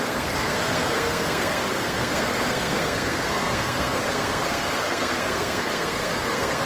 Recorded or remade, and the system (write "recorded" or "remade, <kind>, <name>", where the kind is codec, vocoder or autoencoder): remade, codec, SNAC